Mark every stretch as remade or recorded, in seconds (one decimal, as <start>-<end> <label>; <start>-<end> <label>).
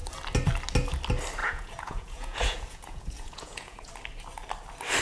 0.0-1.4 recorded; 1.4-3.9 remade; 3.9-5.0 recorded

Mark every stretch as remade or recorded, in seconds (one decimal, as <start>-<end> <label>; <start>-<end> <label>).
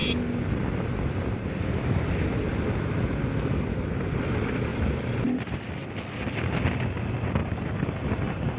0.0-4.7 recorded; 4.7-5.7 remade; 5.7-7.4 recorded; 7.4-8.6 remade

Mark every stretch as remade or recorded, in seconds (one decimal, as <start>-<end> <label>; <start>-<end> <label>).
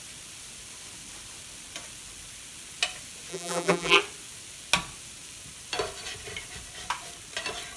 0.0-3.3 recorded; 3.3-4.0 remade; 4.0-7.8 recorded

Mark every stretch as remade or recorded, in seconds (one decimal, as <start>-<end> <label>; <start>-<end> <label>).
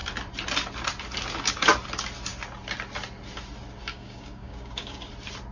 0.0-3.9 recorded; 3.9-5.1 remade; 5.1-5.5 recorded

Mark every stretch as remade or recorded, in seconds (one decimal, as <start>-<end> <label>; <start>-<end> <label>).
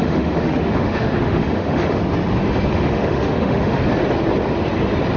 0.0-2.0 remade; 2.0-2.7 recorded; 2.7-3.8 remade; 3.8-5.2 recorded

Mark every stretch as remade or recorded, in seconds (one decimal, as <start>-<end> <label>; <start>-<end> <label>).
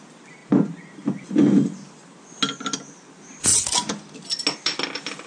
0.0-5.3 recorded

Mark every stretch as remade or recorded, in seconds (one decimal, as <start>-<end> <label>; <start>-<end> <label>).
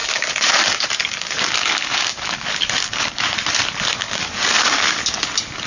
0.0-3.4 remade; 3.4-4.0 recorded; 4.0-5.2 remade; 5.2-5.7 recorded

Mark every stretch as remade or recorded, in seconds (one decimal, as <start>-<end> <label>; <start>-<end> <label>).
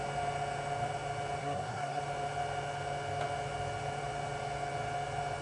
0.0-1.4 recorded; 1.4-2.0 remade; 2.0-5.4 recorded